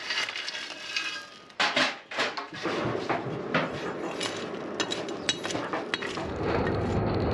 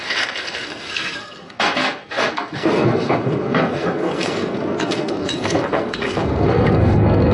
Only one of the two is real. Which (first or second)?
first